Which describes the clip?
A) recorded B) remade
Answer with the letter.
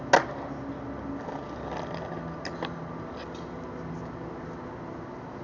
A